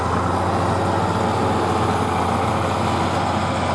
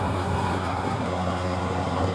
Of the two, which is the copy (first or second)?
second